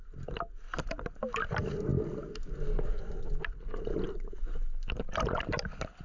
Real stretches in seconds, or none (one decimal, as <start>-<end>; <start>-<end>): 0.0-6.0